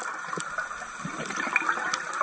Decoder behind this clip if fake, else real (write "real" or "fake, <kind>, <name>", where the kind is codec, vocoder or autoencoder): real